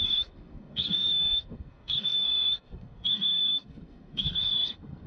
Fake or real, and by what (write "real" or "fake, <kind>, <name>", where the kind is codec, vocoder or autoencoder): fake, codec, SNAC